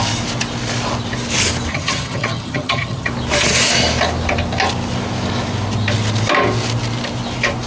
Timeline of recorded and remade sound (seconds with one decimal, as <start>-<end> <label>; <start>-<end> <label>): 0.0-1.7 recorded; 1.7-3.1 remade; 3.1-7.7 recorded